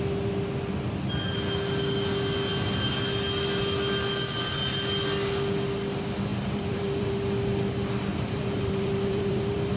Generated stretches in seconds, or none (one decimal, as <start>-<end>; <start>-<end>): 6.3-7.1; 8.1-9.8